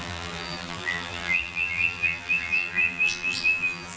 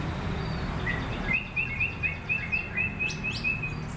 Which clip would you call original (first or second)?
second